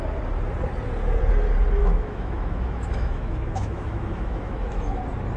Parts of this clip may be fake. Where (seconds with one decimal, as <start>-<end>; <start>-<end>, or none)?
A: 1.8-5.0